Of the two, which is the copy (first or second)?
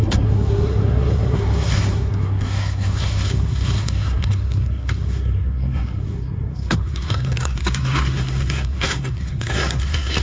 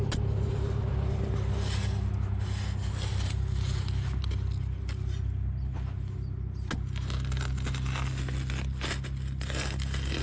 first